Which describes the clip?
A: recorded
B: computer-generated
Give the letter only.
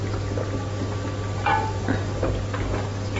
A